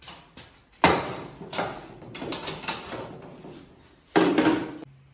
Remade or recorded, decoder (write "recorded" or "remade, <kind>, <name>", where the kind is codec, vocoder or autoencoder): remade, vocoder, BigVGAN v2